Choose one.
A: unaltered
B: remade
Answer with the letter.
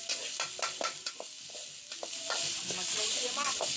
A